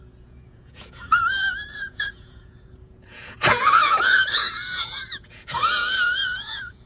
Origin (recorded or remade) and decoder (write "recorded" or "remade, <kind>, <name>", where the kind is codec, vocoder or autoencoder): remade, vocoder, Vocos